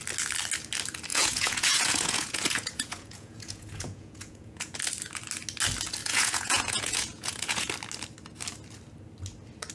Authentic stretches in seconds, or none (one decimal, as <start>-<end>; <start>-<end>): 0.0-1.1; 4.8-6.0; 7.7-9.7